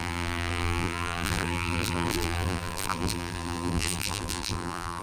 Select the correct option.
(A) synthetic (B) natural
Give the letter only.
A